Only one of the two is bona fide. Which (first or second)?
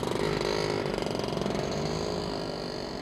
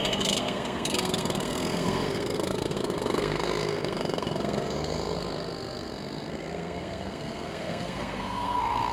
first